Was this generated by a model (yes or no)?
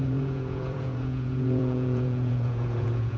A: yes